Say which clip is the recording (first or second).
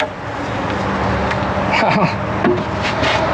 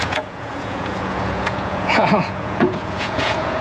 first